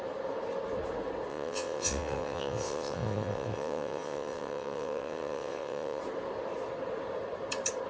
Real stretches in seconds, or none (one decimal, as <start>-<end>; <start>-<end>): 0.0-1.3; 6.0-7.9